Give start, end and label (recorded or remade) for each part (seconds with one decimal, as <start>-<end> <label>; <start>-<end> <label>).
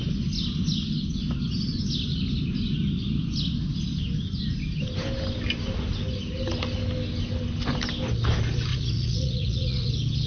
0.0-8.7 recorded; 8.7-9.9 remade; 9.9-10.3 recorded